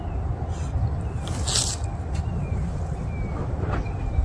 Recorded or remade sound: recorded